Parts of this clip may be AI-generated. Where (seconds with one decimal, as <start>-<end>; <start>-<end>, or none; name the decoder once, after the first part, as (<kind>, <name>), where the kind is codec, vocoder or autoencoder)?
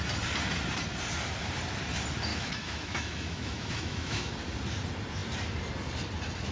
2.3-4.3 (autoencoder, DAC-VAE)